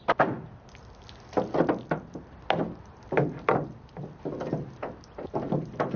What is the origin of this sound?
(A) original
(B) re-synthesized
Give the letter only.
A